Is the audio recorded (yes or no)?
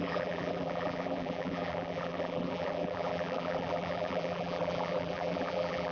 no